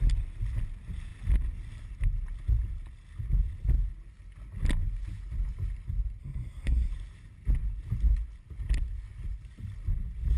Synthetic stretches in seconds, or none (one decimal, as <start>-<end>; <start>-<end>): 6.2-6.9